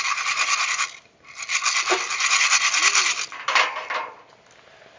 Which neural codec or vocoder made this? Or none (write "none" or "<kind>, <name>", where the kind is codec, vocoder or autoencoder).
none